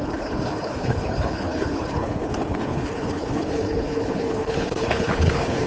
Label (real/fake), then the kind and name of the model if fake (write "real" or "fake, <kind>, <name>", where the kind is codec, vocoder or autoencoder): fake, codec, HILCodec